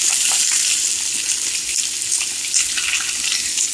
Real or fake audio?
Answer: real